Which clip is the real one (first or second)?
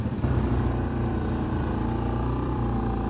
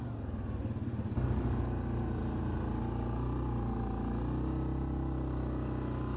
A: second